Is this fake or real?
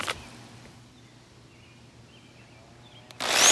real